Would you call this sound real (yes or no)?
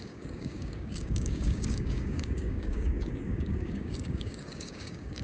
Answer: no